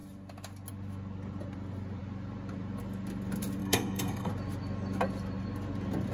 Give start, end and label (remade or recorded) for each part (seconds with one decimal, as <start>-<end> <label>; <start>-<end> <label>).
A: 0.0-3.6 recorded; 3.6-4.3 remade; 4.3-6.1 recorded